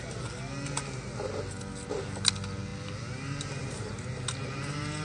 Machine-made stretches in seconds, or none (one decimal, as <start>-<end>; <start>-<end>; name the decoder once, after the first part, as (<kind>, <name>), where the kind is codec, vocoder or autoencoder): none